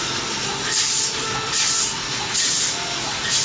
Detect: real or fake real